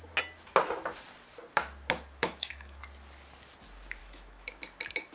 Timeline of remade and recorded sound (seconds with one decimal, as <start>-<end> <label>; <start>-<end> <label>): 0.0-2.2 recorded; 2.2-2.8 remade; 2.8-4.0 recorded; 4.0-4.6 remade; 4.6-5.1 recorded